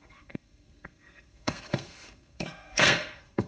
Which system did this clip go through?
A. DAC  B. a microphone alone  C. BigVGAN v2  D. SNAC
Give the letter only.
D